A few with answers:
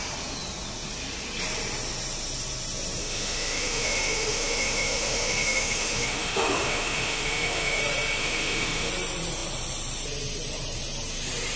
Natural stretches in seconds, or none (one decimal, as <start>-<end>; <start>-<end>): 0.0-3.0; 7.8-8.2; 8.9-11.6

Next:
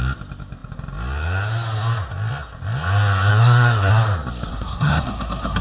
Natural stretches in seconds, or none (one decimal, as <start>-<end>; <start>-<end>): 0.0-3.3; 3.9-4.5

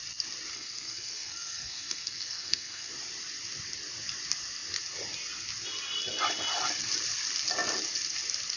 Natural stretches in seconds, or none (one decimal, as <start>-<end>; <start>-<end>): 0.0-0.5; 2.9-8.6